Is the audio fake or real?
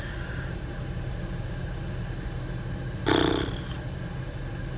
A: real